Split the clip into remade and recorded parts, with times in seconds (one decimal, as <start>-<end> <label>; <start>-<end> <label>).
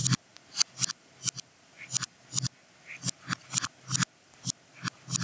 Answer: 0.0-5.2 recorded